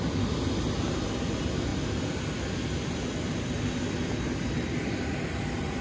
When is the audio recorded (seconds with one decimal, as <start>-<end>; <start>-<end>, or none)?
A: 0.0-5.8

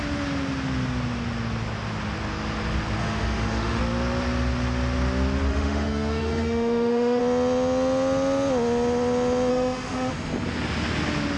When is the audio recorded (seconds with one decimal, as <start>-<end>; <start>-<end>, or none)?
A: 0.0-3.0; 3.8-5.5; 7.2-9.5; 10.1-11.4

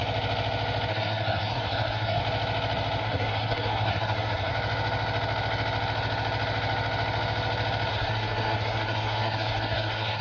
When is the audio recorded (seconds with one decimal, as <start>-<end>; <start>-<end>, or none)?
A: 0.0-0.9; 2.2-3.0; 4.5-7.9